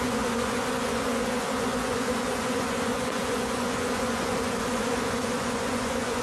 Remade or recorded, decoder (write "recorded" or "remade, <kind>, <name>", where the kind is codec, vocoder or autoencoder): remade, vocoder, Vocos